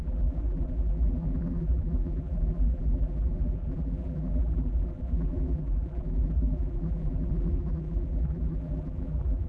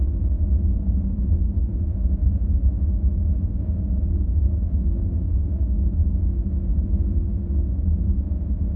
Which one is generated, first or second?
first